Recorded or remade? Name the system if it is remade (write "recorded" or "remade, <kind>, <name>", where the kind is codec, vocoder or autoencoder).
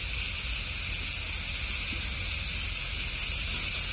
recorded